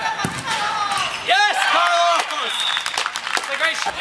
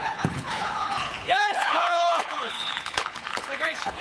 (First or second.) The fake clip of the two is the second